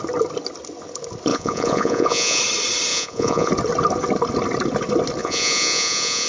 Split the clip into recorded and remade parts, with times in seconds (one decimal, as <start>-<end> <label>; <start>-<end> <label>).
0.0-1.3 recorded; 1.3-2.4 remade; 2.4-2.9 recorded; 2.9-3.5 remade; 3.5-5.2 recorded; 5.2-6.3 remade